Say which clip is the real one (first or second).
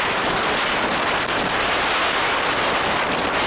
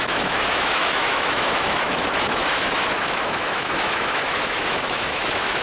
first